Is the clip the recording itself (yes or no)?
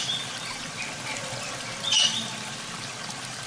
yes